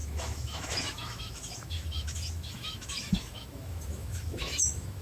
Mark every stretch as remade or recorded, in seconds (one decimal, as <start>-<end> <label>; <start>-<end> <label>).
0.0-5.0 remade